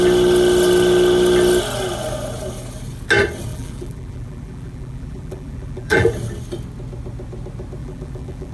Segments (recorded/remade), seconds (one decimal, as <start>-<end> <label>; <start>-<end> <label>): 0.0-3.5 recorded; 3.5-6.1 remade; 6.1-7.8 recorded; 7.8-8.5 remade